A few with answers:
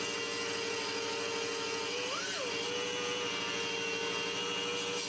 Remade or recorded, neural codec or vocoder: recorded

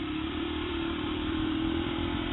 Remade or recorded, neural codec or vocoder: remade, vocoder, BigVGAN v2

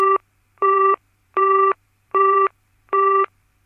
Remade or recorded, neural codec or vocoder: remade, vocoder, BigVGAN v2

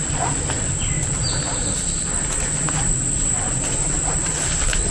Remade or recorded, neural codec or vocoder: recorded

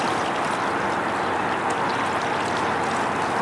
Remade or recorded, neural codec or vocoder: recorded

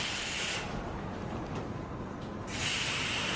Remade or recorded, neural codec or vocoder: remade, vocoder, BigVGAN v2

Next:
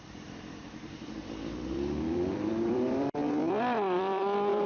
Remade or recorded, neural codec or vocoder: remade, vocoder, BigVGAN v2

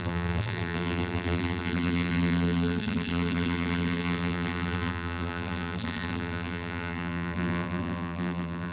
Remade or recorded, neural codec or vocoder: remade, vocoder, BigVGAN v2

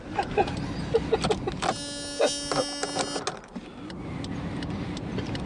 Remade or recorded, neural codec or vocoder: recorded